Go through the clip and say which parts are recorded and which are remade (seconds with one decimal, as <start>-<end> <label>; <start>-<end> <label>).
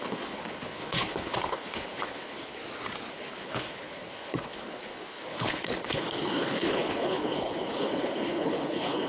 0.0-2.6 remade; 2.6-3.1 recorded; 3.1-9.1 remade